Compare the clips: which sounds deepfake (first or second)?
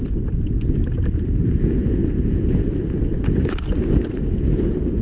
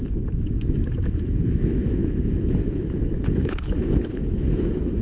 second